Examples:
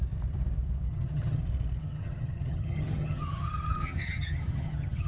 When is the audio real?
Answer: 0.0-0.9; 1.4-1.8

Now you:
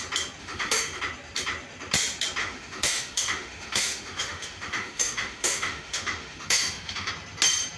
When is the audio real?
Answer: 0.0-0.4; 1.0-2.4; 7.1-7.8

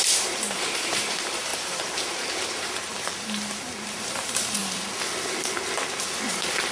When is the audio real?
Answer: 4.6-6.3

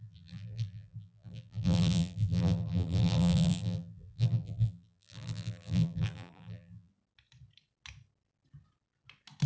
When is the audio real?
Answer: 6.9-9.5